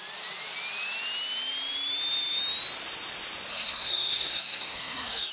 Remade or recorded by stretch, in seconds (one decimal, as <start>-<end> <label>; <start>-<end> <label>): 0.0-3.5 recorded; 3.5-5.3 remade